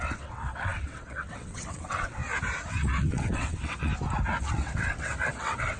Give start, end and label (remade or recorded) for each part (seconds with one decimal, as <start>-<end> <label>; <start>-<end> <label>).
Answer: 0.0-2.2 remade; 2.2-2.7 recorded; 2.7-3.9 remade; 3.9-4.4 recorded; 4.4-5.8 remade

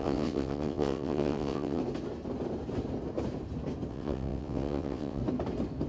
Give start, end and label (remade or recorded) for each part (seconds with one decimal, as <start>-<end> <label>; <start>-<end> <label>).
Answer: 0.0-1.8 remade; 1.8-3.9 recorded; 3.9-5.2 remade; 5.2-5.9 recorded

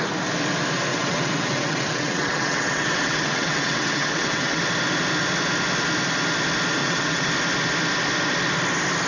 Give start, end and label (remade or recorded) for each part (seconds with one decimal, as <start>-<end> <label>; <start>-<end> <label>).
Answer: 0.0-0.9 recorded; 0.9-4.6 remade; 4.6-6.8 recorded; 6.8-7.3 remade; 7.3-9.1 recorded

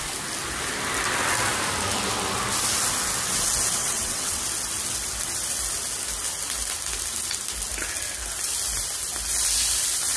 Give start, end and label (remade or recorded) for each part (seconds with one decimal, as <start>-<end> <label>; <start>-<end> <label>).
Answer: 0.0-3.8 recorded; 3.8-4.4 remade; 4.4-10.2 recorded

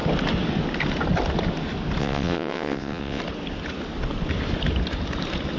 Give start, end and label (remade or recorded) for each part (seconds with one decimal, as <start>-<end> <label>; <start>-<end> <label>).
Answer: 0.0-2.0 recorded; 2.0-3.2 remade; 3.2-5.6 recorded